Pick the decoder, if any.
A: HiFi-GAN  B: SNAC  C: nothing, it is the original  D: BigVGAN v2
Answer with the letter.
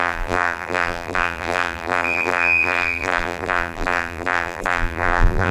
D